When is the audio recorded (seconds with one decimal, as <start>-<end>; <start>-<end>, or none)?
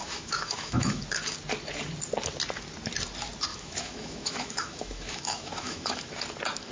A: 1.0-3.5; 6.1-6.7